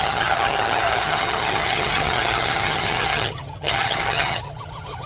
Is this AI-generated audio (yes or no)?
yes